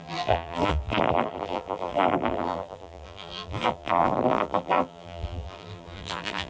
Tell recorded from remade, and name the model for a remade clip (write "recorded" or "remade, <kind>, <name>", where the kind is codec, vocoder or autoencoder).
remade, vocoder, BigVGAN v2